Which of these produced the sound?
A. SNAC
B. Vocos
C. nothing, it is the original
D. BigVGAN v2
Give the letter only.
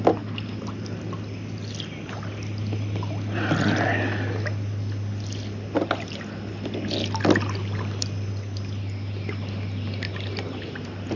C